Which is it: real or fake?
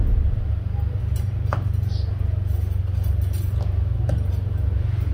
real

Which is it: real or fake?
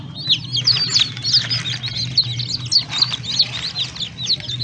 real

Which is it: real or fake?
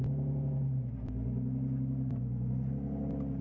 real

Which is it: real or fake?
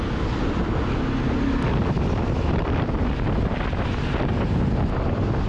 real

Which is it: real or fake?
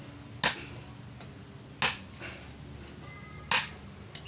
real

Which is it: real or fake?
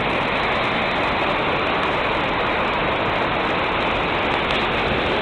real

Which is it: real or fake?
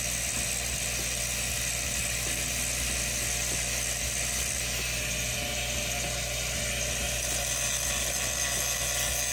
real